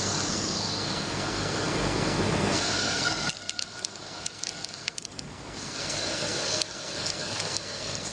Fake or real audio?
fake